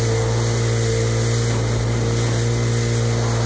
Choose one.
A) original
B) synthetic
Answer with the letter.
A